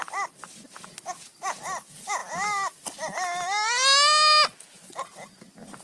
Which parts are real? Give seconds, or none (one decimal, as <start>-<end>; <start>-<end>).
0.0-5.8